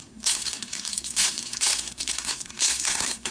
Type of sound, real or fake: fake